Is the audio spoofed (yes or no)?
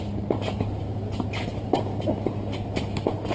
no